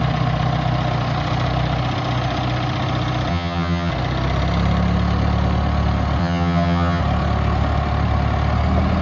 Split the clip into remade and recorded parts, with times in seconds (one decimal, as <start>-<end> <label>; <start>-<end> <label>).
0.0-3.3 recorded; 3.3-3.9 remade; 3.9-6.2 recorded; 6.2-7.0 remade; 7.0-9.0 recorded